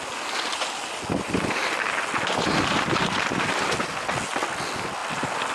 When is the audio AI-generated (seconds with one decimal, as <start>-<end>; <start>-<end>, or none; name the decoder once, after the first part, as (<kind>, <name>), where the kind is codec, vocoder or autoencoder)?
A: none